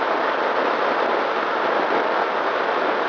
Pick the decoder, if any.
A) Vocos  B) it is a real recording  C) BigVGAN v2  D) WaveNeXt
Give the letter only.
B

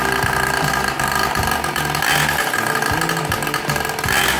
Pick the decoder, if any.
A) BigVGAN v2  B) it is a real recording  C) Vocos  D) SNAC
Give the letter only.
B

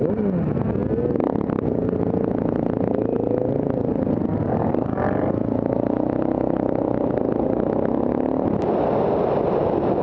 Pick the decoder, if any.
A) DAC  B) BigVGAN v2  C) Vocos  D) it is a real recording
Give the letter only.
D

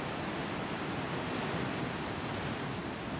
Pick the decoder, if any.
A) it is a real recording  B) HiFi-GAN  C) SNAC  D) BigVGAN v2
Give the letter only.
A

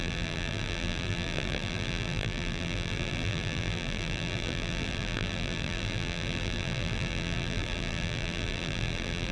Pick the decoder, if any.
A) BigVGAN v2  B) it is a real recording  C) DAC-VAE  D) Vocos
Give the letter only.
A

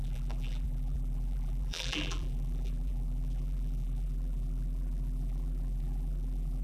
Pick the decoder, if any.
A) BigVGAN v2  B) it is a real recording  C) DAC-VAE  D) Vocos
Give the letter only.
A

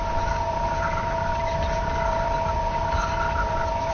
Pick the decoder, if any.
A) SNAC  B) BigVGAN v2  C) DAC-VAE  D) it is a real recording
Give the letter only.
B